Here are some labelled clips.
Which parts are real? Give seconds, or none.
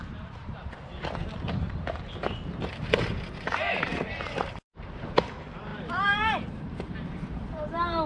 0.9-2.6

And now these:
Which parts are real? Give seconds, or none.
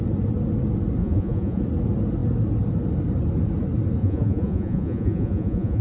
0.0-1.0; 1.6-4.0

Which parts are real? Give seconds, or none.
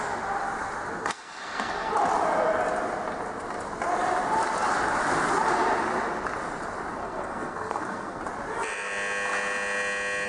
0.0-1.0; 1.9-7.0; 8.2-10.3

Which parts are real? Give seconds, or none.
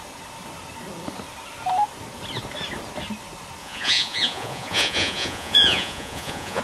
0.0-3.6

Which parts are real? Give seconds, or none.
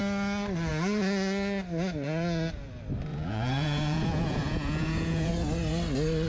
0.0-3.1; 5.3-6.3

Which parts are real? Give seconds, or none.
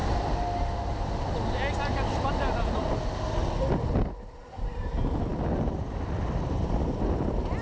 0.0-2.3